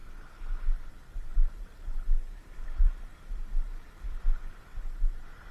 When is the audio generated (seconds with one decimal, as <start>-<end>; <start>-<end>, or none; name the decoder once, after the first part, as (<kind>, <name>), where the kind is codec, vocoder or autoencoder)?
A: 1.3-4.6 (vocoder, BigVGAN v2)